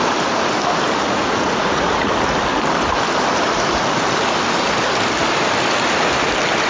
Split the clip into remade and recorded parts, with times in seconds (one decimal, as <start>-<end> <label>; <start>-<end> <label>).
0.0-1.0 recorded; 1.0-2.1 remade; 2.1-6.7 recorded